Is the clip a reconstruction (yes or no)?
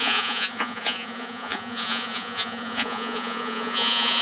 yes